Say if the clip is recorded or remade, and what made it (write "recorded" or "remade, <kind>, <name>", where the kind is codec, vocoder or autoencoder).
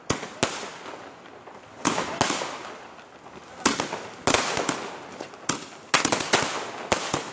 recorded